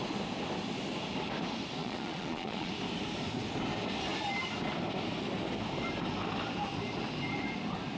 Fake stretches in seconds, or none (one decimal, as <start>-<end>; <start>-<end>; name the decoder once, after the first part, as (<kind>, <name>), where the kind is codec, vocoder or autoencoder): 1.8-2.7 (vocoder, Vocos)